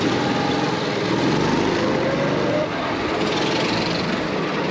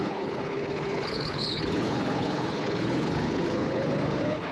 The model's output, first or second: second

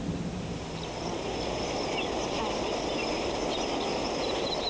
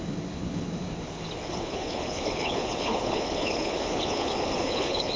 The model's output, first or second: second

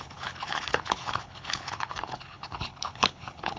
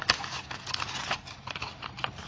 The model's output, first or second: first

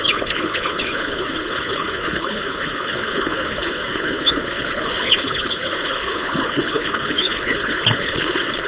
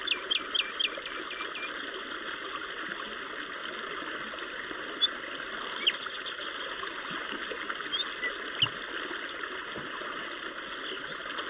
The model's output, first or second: first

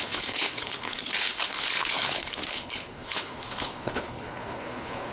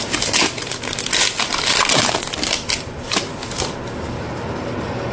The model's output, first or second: first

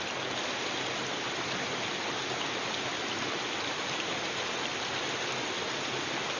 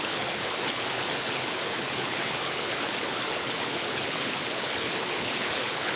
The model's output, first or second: second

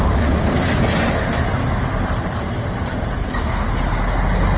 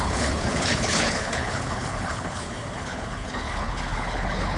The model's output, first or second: second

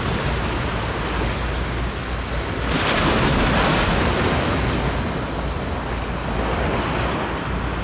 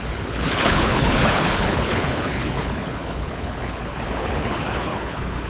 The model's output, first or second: second